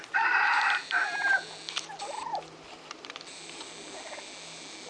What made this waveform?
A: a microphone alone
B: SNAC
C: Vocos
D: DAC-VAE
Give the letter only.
A